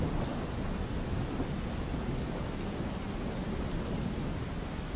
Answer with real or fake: real